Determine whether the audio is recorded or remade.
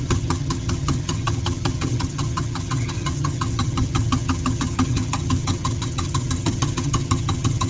remade